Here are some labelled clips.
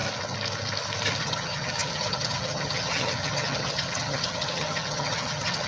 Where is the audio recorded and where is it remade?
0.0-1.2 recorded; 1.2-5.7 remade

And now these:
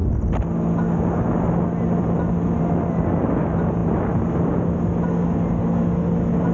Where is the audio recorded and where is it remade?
0.0-6.5 recorded

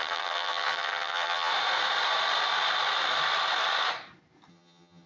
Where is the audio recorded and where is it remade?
0.0-1.5 remade; 1.5-4.5 recorded; 4.5-5.1 remade

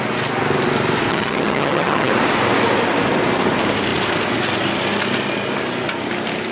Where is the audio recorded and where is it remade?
0.0-1.1 recorded; 1.1-2.1 remade; 2.1-6.5 recorded

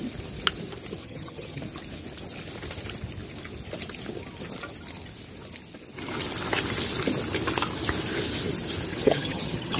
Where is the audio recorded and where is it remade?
0.0-1.0 recorded; 1.0-1.6 remade; 1.6-8.9 recorded; 8.9-9.8 remade